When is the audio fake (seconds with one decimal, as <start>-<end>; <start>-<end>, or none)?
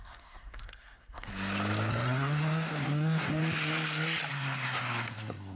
0.0-1.3; 1.9-3.4; 4.3-5.6